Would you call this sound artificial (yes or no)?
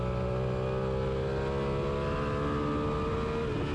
no